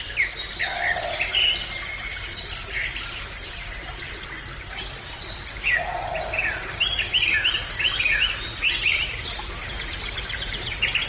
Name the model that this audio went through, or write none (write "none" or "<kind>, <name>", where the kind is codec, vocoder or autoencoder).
none